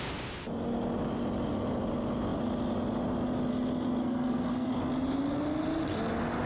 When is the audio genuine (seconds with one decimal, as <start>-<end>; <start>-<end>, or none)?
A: 0.0-4.0; 4.7-6.5